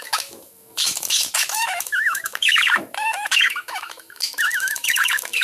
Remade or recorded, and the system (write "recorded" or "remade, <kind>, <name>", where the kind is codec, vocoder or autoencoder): remade, autoencoder, DAC-VAE